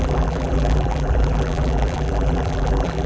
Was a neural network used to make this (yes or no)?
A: yes